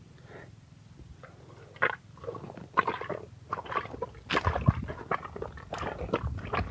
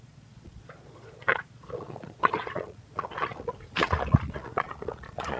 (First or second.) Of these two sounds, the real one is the first